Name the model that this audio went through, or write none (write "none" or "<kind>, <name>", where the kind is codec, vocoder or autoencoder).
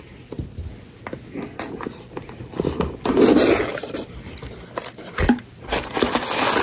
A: none